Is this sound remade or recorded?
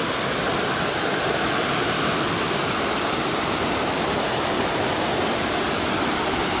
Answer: recorded